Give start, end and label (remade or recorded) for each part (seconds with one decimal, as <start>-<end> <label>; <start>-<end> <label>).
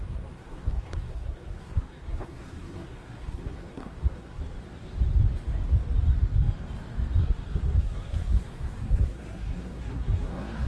0.0-4.4 remade; 4.4-7.2 recorded; 7.2-10.7 remade